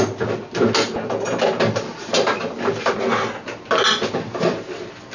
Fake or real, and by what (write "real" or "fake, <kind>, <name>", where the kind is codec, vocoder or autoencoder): real